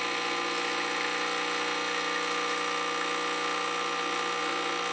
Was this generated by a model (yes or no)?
no